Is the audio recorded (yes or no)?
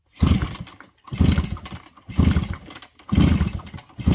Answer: yes